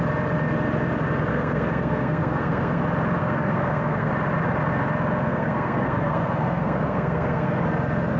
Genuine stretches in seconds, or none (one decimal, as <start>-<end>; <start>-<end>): 0.0-1.3; 2.8-3.2; 4.1-5.3; 7.6-8.2